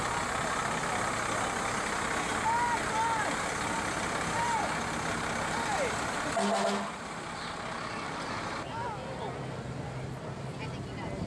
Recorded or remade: recorded